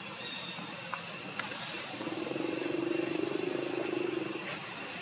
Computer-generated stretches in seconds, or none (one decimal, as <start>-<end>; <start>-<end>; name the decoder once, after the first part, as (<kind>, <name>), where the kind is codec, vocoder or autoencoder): 1.5-3.7 (vocoder, BigVGAN v2)

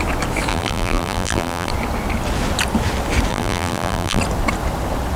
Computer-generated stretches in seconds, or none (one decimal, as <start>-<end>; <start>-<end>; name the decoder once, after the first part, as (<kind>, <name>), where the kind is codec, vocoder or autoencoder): 0.5-1.7 (vocoder, BigVGAN v2); 3.3-4.2